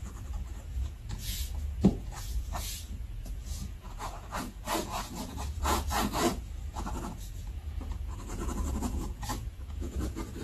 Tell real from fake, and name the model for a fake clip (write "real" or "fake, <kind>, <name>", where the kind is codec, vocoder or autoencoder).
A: fake, vocoder, Vocos